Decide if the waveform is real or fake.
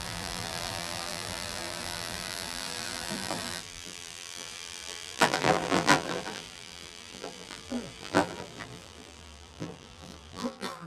fake